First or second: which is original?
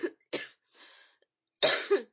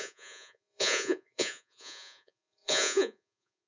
first